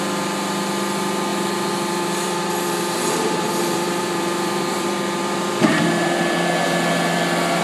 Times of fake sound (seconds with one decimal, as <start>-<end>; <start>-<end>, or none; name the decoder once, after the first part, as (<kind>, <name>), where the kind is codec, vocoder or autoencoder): 1.3-5.9 (vocoder, BigVGAN v2)